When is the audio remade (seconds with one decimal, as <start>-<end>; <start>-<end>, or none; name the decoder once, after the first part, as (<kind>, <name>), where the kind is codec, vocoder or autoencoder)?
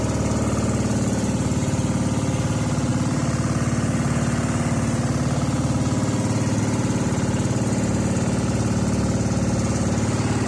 none